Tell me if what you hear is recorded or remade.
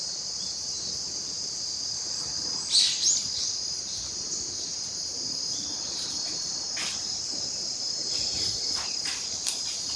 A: recorded